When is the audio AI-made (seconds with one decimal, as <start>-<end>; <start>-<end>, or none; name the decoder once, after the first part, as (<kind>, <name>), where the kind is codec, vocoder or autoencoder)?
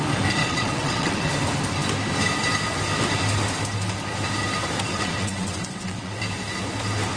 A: 0.4-1.3 (vocoder, WaveNeXt); 4.9-6.2